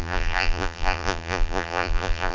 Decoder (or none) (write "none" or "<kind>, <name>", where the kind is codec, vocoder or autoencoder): vocoder, BigVGAN v2